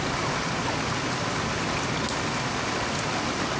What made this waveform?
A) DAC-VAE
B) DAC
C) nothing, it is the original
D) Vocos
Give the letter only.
C